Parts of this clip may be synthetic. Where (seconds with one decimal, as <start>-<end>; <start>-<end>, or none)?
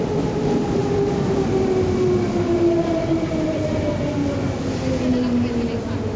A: none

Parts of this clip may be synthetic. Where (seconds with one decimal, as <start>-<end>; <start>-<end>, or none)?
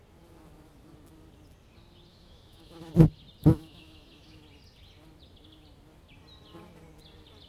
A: 2.1-2.9; 3.4-4.4